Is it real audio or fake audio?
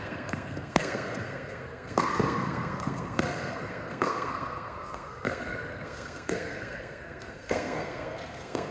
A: fake